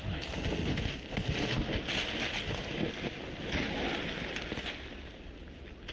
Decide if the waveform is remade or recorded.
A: recorded